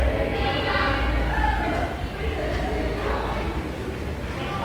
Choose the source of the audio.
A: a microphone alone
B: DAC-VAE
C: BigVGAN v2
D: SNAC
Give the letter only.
A